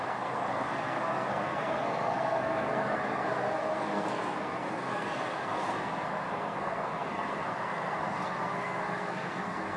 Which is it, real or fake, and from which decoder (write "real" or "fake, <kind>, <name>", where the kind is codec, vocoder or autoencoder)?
fake, codec, SNAC